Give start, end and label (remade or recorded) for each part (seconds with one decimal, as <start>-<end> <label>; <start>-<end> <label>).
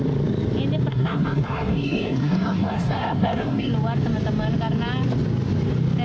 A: 0.0-0.9 recorded; 0.9-3.7 remade; 3.7-6.0 recorded